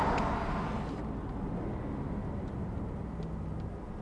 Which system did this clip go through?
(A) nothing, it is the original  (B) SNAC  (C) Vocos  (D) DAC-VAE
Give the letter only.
A